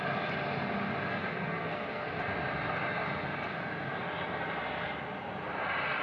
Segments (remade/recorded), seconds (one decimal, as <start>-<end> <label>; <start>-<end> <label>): 0.0-1.1 recorded; 1.1-2.2 remade; 2.2-6.0 recorded